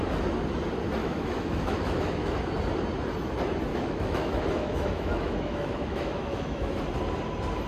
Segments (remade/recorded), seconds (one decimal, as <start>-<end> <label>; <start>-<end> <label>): 0.0-1.0 recorded; 1.0-2.3 remade; 2.3-3.7 recorded; 3.7-6.8 remade; 6.8-7.7 recorded